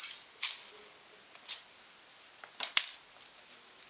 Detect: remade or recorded recorded